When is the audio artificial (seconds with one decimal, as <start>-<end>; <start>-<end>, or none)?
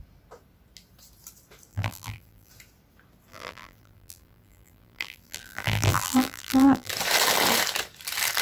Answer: 1.7-2.5; 3.3-6.9